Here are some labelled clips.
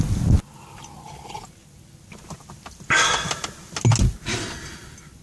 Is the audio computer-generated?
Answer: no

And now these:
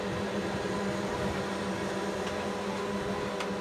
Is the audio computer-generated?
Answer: no